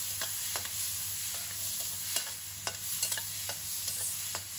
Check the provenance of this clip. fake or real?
real